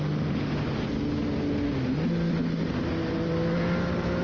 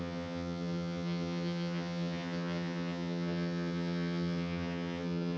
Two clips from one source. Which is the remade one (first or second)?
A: second